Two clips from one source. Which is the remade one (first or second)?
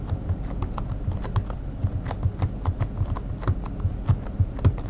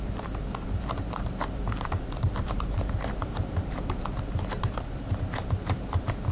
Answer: second